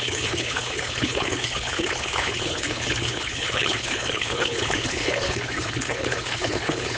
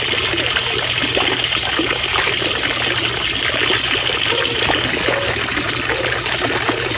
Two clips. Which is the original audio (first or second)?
second